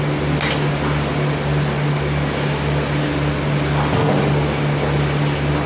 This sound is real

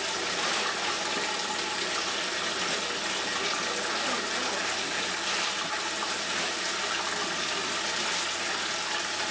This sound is real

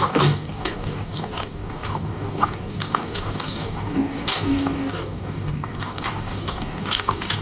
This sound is fake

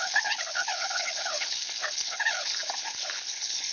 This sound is fake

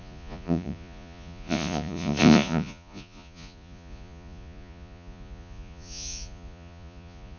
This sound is fake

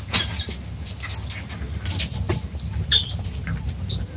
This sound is real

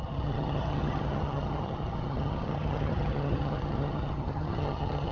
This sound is fake